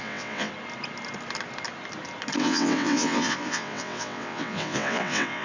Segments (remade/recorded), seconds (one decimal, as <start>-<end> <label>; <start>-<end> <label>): 0.0-0.5 remade; 0.5-2.4 recorded; 2.4-5.4 remade